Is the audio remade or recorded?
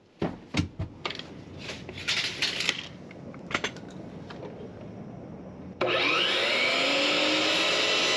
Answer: recorded